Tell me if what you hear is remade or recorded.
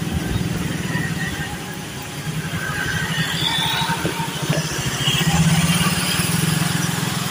recorded